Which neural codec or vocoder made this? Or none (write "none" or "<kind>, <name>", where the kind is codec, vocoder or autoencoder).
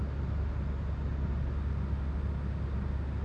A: none